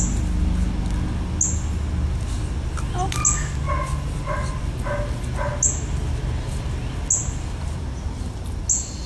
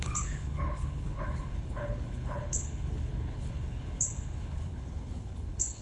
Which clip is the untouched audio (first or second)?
first